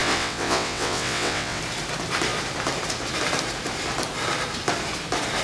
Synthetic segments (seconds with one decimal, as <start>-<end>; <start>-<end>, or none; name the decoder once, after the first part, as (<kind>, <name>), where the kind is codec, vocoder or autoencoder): 0.0-1.6 (vocoder, WaveNeXt)

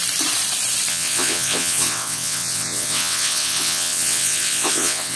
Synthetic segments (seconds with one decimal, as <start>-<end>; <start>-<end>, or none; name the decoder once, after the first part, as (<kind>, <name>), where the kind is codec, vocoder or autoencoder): 0.9-5.2 (vocoder, WaveNeXt)

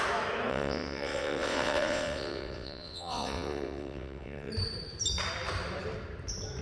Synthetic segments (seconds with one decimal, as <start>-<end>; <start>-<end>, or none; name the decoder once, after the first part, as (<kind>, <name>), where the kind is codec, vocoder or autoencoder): 0.5-4.5 (vocoder, WaveNeXt)

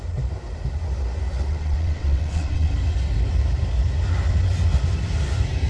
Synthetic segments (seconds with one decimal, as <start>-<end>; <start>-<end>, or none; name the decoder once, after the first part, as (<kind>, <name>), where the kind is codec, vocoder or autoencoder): 1.5-2.7 (vocoder, WaveNeXt)

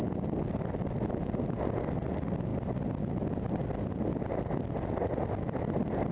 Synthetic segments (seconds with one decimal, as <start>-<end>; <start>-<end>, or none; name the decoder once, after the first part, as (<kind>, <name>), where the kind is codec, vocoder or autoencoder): none

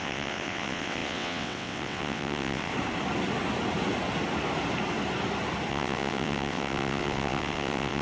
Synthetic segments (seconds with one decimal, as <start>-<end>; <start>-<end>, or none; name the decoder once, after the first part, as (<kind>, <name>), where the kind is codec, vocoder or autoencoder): 0.0-2.7 (vocoder, WaveNeXt); 5.7-8.0

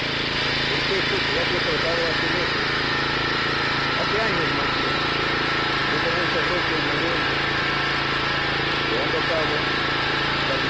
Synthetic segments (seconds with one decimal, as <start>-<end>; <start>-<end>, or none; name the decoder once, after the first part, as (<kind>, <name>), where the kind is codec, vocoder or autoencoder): none